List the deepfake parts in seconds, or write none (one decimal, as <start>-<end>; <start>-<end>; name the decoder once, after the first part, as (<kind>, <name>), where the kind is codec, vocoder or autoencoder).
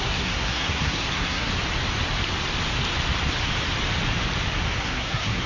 0.0-1.5 (codec, SNAC); 4.8-5.5